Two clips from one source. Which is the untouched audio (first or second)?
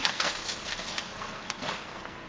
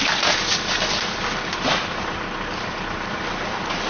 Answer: second